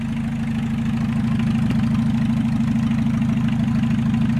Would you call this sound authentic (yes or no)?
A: yes